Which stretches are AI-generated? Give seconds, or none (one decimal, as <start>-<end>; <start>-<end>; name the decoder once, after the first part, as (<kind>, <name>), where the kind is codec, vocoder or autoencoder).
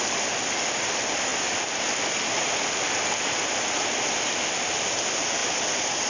none